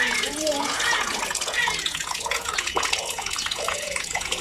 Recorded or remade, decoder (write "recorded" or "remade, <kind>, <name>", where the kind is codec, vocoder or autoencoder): remade, vocoder, Vocos